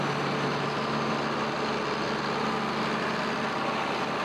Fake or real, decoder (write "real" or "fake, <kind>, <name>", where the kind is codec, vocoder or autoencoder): real